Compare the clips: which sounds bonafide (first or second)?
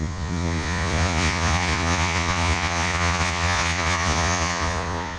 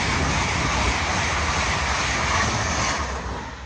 second